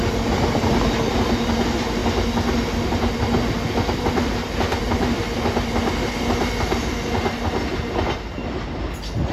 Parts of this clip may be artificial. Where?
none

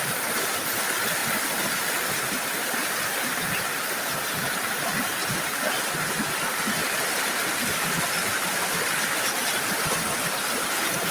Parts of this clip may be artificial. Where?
none

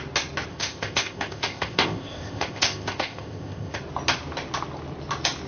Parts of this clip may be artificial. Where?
0.5-3.8

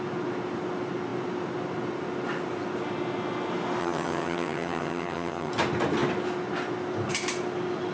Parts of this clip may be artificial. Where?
3.8-5.5

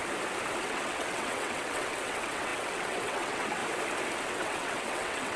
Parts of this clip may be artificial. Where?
0.6-3.6; 4.3-5.4

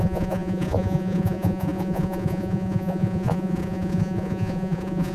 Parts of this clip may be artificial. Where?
0.0-5.1

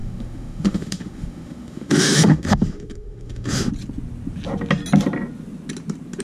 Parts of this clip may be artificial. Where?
0.0-3.7

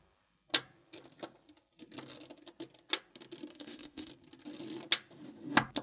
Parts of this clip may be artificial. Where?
3.5-4.1